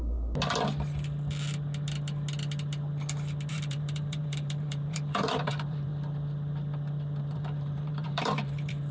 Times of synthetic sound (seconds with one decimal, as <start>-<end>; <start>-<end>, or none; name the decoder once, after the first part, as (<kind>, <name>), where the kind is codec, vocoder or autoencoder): 3.5-5.9 (vocoder, BigVGAN v2); 7.2-8.9